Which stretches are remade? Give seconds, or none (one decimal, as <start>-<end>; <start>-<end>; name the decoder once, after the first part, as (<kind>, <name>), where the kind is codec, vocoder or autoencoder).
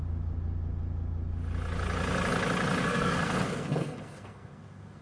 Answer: 2.8-5.0 (codec, SNAC)